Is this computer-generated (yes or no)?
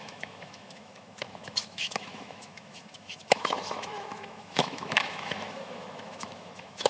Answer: yes